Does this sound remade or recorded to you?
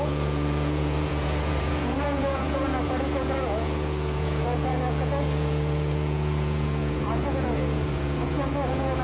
remade